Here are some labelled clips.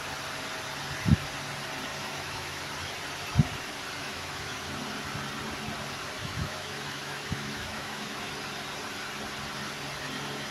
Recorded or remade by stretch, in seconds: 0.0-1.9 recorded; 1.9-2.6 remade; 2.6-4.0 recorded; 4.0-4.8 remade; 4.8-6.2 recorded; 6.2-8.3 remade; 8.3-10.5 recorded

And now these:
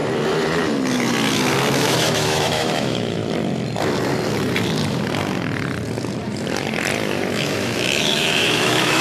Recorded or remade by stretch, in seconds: 0.0-1.7 recorded; 1.7-3.2 remade; 3.2-7.3 recorded; 7.3-9.0 remade

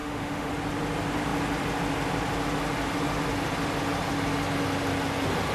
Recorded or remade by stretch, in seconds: 0.0-0.5 remade; 0.5-5.5 recorded

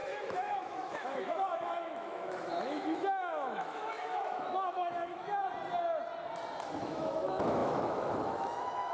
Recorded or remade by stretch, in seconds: 0.0-5.4 remade; 5.4-6.8 recorded; 6.8-8.9 remade

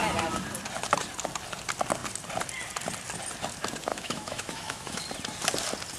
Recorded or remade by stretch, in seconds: 0.0-3.9 recorded; 3.9-5.0 remade; 5.0-6.0 recorded

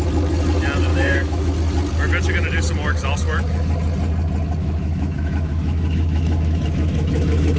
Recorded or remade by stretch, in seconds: 0.0-0.9 recorded; 0.9-1.5 remade; 1.5-4.6 recorded; 4.6-7.6 remade

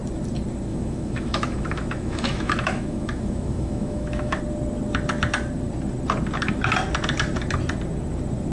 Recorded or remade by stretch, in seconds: 0.0-0.7 recorded; 0.7-4.4 remade; 4.4-8.5 recorded